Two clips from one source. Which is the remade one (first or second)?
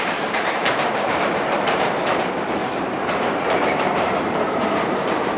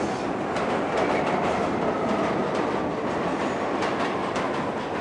first